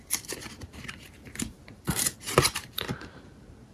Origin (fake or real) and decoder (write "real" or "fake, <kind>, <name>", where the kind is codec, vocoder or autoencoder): fake, vocoder, BigVGAN v2